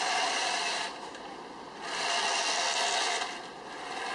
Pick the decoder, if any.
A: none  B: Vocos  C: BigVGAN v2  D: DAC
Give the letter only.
A